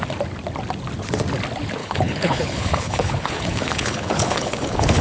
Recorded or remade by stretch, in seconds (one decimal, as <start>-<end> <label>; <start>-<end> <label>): 0.0-1.8 recorded; 1.8-5.0 remade